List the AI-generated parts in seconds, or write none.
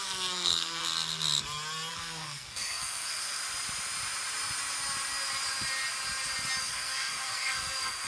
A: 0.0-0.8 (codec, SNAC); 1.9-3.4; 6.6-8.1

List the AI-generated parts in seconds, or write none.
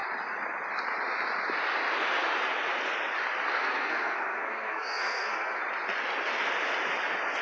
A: 3.6-5.6 (codec, SNAC)